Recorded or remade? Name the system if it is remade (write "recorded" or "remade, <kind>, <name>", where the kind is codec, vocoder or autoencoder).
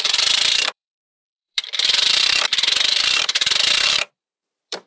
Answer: remade, vocoder, BigVGAN v2